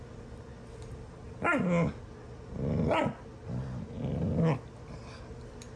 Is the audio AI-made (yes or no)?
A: no